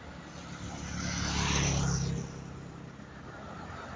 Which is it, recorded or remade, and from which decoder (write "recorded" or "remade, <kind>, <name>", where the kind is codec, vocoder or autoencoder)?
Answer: recorded